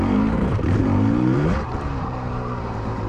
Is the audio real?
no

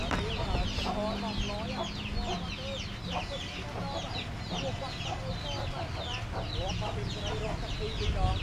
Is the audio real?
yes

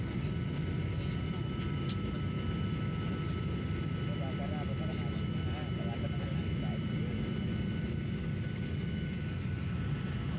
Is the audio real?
yes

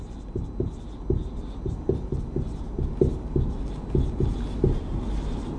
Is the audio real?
yes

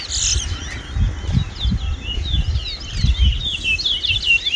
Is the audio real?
yes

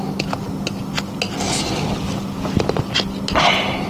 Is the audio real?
yes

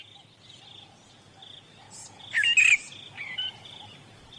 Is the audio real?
yes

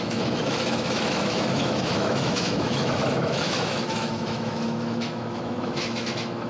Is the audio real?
no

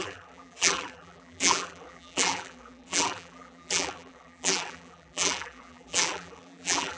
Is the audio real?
no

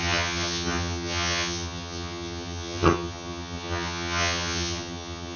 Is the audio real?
no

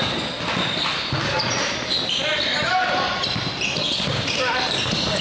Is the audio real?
yes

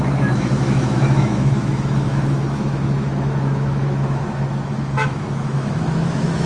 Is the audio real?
no